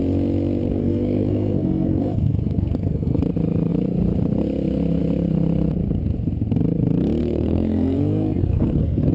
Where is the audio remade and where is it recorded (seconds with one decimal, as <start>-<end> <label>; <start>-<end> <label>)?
0.0-0.8 recorded; 0.8-3.2 remade; 3.2-7.2 recorded; 7.2-9.1 remade